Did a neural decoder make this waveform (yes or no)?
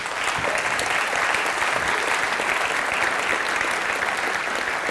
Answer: no